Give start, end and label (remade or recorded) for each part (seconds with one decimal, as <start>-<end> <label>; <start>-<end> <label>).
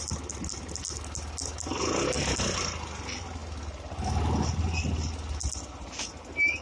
0.0-6.6 recorded